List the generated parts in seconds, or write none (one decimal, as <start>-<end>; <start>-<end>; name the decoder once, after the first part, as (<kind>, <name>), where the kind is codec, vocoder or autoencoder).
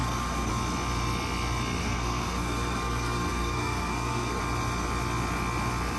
0.0-0.5 (codec, SNAC); 1.8-4.4